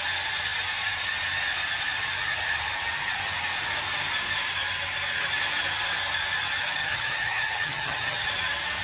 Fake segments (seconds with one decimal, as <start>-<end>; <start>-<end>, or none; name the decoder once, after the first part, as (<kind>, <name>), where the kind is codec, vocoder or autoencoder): 6.8-8.3 (vocoder, HiFi-GAN)